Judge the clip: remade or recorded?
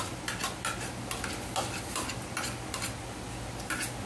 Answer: recorded